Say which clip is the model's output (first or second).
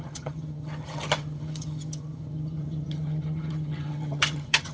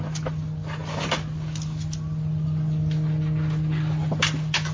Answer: first